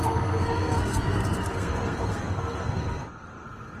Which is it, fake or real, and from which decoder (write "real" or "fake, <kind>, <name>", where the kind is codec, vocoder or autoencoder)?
fake, codec, SNAC